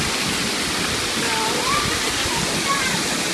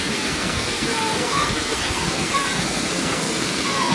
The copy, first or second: second